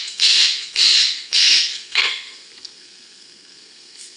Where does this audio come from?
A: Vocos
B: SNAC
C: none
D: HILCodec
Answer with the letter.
B